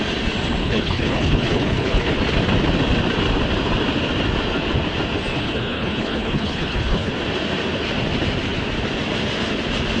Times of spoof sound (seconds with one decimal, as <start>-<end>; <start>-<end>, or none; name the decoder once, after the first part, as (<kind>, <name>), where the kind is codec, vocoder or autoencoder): 0.6-2.1 (codec, HILCodec); 5.3-7.1